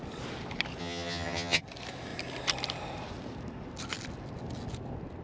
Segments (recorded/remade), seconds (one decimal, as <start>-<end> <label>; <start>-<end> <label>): 0.0-0.8 recorded; 0.8-1.6 remade; 1.6-5.2 recorded